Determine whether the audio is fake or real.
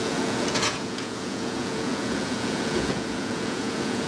fake